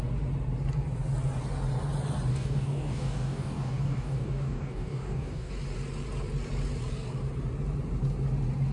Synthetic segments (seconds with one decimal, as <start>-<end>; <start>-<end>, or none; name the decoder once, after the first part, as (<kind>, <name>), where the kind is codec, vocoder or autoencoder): 2.3-5.5 (codec, DAC)